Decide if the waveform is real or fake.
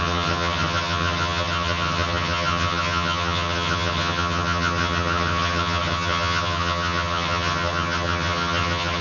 fake